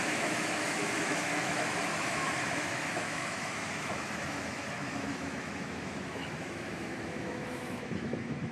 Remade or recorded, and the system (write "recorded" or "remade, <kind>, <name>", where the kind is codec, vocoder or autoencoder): remade, autoencoder, DAC-VAE